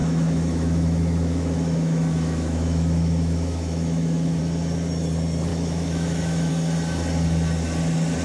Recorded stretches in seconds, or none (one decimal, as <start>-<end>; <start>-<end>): 4.4-5.5; 6.5-8.2